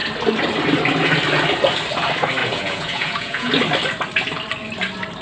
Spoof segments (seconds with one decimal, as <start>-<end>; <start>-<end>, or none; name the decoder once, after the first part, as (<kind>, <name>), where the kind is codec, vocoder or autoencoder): 2.4-3.5 (vocoder, Vocos)